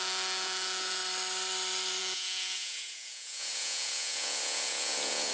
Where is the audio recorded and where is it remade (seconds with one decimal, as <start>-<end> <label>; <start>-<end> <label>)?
0.0-1.0 remade; 1.0-2.0 recorded; 2.0-5.3 remade